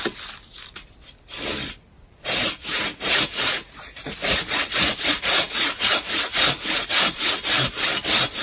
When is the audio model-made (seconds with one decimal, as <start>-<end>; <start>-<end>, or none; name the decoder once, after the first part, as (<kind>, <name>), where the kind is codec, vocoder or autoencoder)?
2.6-7.0 (vocoder, Vocos)